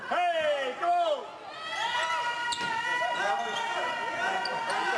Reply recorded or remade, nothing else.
recorded